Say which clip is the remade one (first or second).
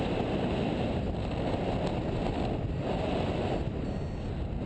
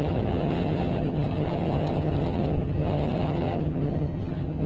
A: second